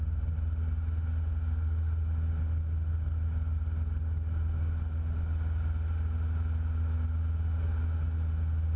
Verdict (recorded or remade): recorded